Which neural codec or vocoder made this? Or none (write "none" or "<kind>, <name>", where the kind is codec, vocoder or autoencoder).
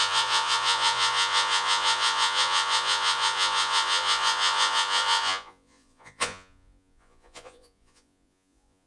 vocoder, Vocos